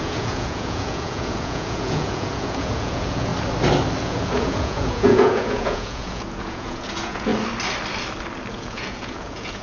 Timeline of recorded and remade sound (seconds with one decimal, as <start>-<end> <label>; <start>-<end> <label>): 0.0-3.3 remade; 3.3-4.0 recorded; 4.0-7.3 remade; 7.3-8.5 recorded; 8.5-9.6 remade